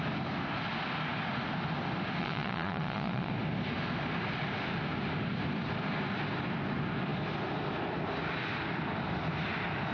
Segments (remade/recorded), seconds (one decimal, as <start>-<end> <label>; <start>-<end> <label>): 0.0-2.2 recorded; 2.2-3.3 remade; 3.3-9.9 recorded